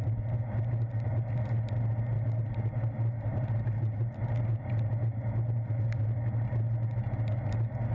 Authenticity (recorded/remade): recorded